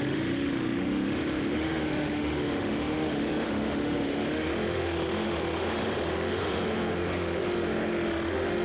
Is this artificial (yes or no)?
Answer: yes